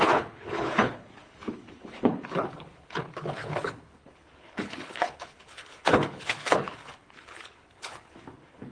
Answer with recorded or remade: remade